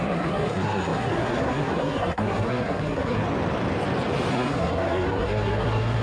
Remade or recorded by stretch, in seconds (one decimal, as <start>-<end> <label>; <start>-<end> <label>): 0.0-3.2 remade; 3.2-4.3 recorded; 4.3-6.0 remade

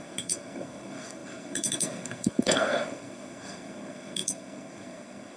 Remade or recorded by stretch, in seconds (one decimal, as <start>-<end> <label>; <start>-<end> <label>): 0.0-5.4 remade

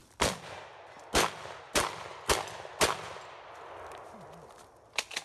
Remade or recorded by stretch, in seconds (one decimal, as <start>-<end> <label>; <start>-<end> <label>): 0.0-5.2 recorded